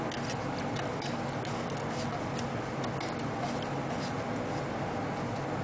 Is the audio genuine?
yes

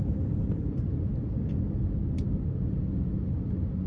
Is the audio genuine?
yes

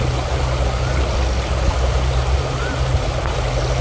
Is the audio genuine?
yes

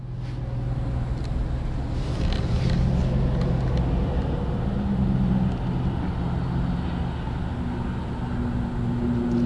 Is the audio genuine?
yes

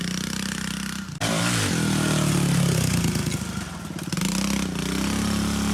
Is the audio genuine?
yes